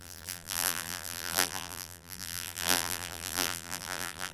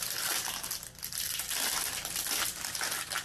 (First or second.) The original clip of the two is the second